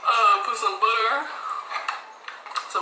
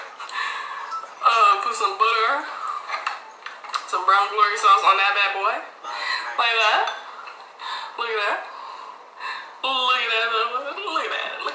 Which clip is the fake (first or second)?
first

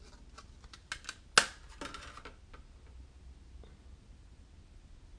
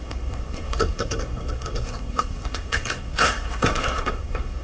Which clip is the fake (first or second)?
second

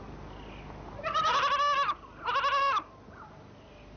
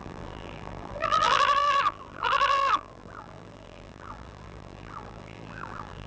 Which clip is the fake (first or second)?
second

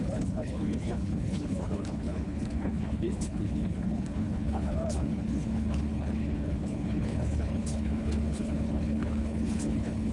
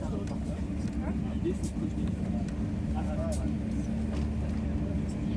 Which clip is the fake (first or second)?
first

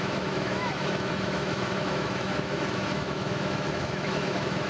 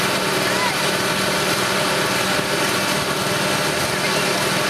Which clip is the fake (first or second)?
first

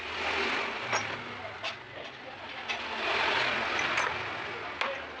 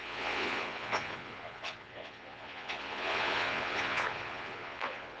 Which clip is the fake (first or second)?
second